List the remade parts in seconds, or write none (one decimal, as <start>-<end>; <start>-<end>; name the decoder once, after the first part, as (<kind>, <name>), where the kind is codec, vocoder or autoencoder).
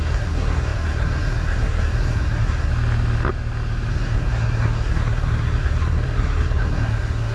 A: 0.0-2.7 (codec, SNAC); 3.9-7.3